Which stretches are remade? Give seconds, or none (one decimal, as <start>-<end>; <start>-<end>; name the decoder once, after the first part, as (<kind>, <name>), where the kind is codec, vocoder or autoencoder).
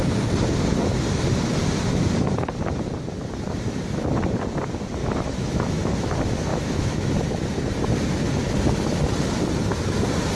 5.0-6.1 (autoencoder, DAC-VAE); 6.5-7.1